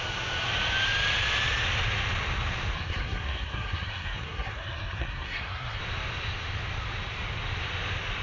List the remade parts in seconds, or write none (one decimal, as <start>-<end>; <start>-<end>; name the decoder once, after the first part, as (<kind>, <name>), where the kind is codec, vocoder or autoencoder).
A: 2.7-5.8 (codec, SNAC)